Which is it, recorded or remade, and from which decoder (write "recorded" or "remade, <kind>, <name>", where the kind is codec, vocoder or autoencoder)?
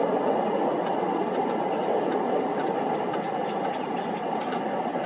recorded